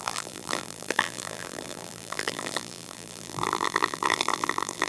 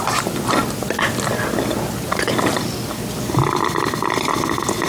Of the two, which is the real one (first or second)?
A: second